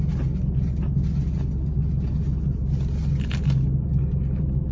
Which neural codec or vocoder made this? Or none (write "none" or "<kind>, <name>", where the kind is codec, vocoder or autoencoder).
none